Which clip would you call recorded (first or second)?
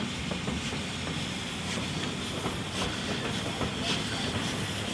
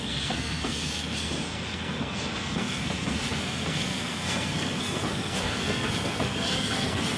first